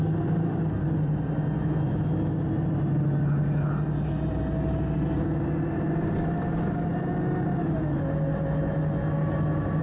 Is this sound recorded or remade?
recorded